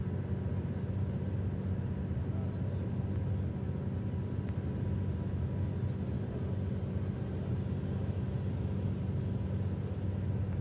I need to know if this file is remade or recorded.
recorded